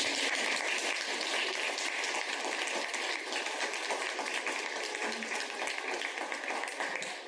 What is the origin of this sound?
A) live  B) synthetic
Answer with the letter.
A